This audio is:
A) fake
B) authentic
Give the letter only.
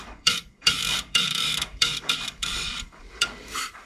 A